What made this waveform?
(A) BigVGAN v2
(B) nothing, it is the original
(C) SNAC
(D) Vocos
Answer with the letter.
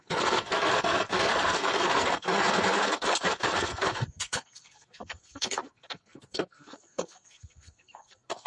C